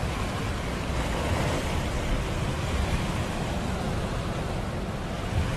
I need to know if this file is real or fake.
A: real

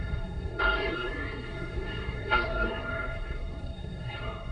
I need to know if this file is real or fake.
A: fake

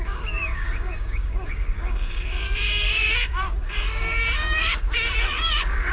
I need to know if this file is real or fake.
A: fake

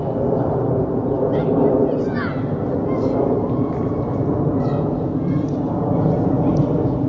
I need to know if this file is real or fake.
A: real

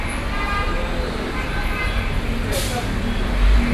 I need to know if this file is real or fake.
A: real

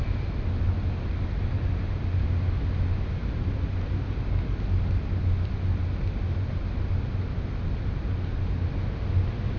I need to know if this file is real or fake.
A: real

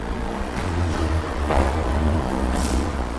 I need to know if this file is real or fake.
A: fake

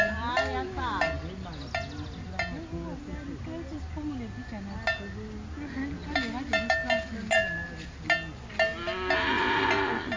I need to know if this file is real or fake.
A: real